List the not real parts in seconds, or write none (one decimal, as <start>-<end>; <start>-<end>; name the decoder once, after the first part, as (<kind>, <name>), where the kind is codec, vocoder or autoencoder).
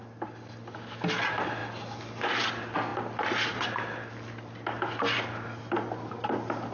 none